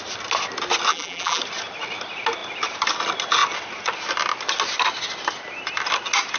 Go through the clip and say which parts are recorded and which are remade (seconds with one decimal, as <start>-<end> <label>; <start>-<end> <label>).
0.0-0.9 recorded; 0.9-1.4 remade; 1.4-6.4 recorded